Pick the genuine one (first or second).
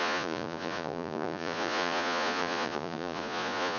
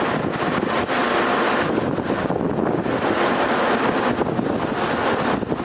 second